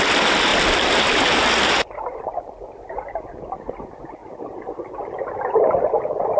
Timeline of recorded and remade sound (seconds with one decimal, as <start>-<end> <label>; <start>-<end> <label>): 0.0-6.4 recorded